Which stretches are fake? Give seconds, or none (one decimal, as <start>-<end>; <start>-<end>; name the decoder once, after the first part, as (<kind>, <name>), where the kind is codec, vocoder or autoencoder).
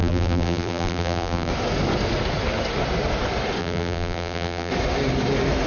0.0-1.5 (vocoder, BigVGAN v2); 3.6-4.7